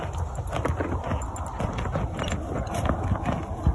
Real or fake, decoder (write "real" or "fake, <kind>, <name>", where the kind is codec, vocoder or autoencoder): real